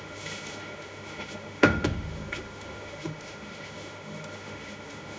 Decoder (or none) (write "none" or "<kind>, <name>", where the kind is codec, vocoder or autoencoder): autoencoder, DAC-VAE